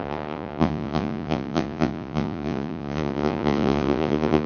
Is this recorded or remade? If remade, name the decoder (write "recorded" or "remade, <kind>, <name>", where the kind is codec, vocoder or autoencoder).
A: remade, vocoder, Vocos